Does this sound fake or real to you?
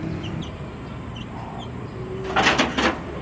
real